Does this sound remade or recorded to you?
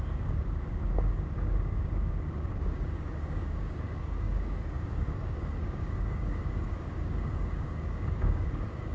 remade